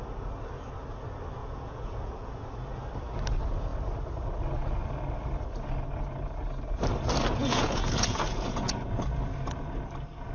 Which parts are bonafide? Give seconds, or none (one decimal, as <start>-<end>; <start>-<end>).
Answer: 0.0-1.4; 2.5-7.4; 8.8-10.3